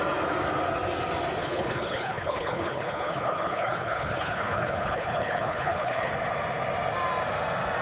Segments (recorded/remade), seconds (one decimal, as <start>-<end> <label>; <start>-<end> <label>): 0.0-1.4 recorded; 1.4-6.1 remade; 6.1-7.8 recorded